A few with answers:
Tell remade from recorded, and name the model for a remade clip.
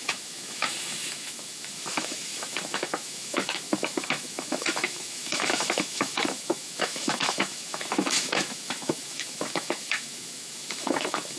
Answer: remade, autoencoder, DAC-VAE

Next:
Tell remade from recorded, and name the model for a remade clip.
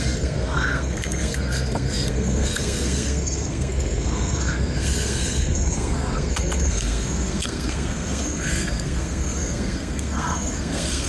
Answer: remade, codec, SNAC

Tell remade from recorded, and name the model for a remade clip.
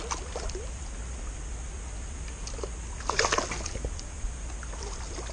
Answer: recorded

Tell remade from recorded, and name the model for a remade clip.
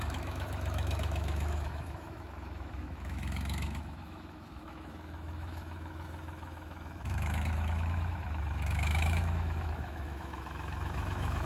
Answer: remade, autoencoder, DAC-VAE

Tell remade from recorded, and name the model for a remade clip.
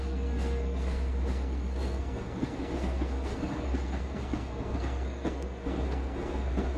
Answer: remade, codec, SNAC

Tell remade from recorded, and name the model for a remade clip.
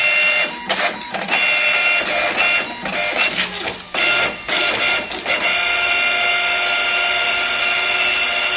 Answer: recorded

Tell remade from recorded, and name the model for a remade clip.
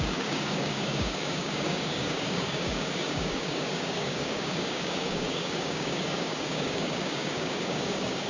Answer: remade, codec, DAC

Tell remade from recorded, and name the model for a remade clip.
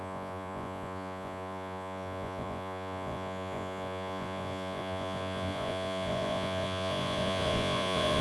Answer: remade, vocoder, Vocos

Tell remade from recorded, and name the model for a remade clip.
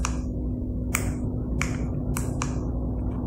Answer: recorded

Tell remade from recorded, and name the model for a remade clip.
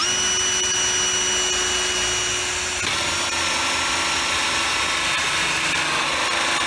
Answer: recorded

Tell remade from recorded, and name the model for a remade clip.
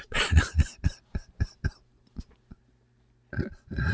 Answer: recorded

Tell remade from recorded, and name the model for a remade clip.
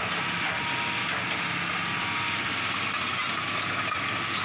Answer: recorded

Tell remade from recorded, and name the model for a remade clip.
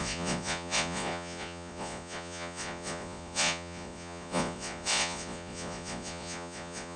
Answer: remade, vocoder, Vocos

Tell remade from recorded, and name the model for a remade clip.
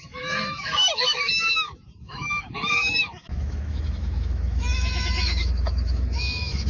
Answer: remade, autoencoder, DAC-VAE